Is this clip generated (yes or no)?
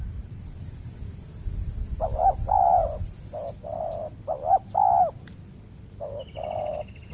no